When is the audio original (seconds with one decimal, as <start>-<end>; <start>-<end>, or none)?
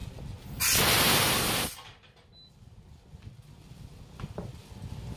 0.0-5.2